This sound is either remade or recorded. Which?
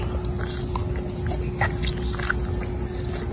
recorded